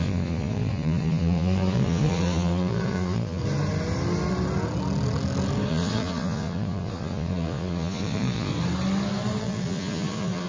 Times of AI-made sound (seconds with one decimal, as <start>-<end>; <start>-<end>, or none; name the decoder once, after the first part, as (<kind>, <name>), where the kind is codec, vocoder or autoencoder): 0.0-3.4 (vocoder, Vocos); 5.7-8.5; 9.4-10.5